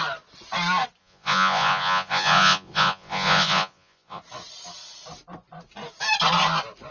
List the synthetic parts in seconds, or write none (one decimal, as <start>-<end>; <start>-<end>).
1.0-4.2